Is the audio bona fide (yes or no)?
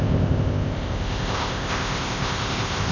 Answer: no